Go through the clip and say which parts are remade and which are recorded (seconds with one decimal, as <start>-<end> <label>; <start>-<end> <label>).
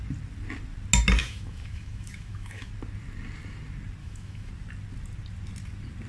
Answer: 0.0-1.2 recorded; 1.2-2.7 remade; 2.7-4.0 recorded; 4.0-4.5 remade; 4.5-6.1 recorded